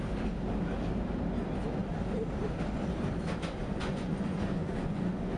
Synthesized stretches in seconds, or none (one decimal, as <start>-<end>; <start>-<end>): 3.6-5.4